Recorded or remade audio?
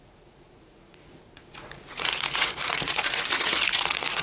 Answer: remade